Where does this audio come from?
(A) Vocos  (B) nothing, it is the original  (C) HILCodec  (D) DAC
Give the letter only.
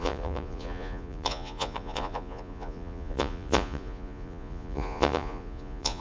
A